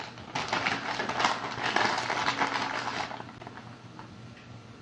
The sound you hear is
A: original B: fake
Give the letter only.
A